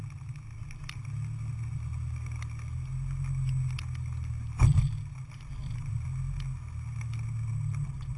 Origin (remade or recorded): recorded